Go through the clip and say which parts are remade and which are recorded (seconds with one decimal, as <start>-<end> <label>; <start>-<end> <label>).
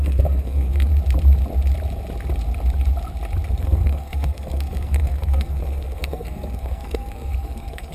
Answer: 0.0-0.9 remade; 0.9-3.5 recorded; 3.5-7.9 remade